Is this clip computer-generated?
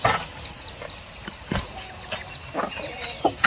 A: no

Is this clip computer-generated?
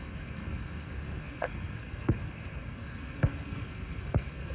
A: yes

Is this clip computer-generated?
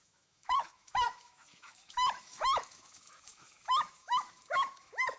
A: yes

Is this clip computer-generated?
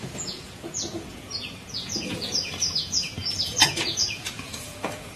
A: yes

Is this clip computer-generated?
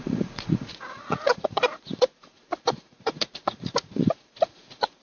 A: yes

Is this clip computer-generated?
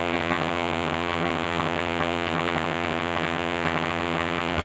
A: yes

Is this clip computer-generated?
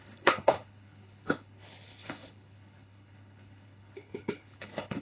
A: yes